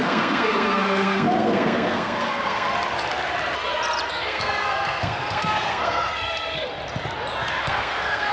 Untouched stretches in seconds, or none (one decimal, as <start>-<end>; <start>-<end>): 2.7-4.1; 6.7-7.6